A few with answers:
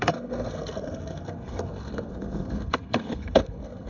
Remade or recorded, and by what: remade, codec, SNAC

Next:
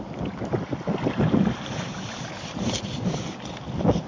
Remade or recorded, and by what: recorded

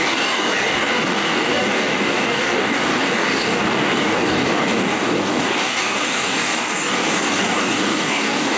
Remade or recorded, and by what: remade, codec, DAC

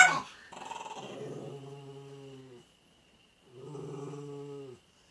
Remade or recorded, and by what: recorded